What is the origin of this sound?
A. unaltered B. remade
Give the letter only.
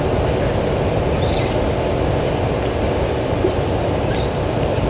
A